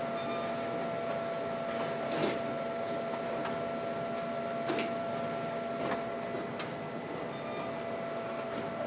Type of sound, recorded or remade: recorded